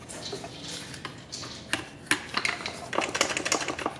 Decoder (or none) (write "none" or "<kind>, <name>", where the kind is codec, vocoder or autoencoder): none